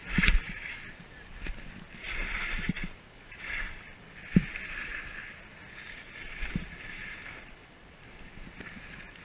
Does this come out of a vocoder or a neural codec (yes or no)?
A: no